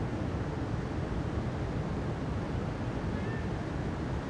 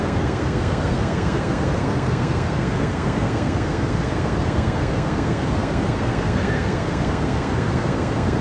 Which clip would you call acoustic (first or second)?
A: first